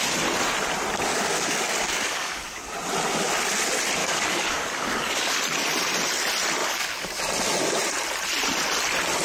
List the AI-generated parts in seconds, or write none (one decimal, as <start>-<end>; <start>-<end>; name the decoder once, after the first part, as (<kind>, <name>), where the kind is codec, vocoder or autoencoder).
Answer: 1.1-2.7 (codec, DAC); 4.0-5.4; 6.6-7.2